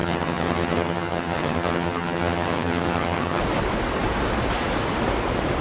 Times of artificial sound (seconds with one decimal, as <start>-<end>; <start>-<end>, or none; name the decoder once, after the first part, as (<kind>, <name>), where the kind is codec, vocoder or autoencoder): 0.0-3.4 (vocoder, HiFi-GAN)